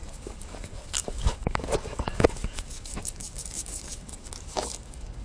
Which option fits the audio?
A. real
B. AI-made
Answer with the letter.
B